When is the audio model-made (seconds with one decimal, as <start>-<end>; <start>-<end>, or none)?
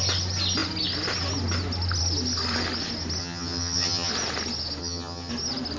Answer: 3.2-4.1; 4.8-5.3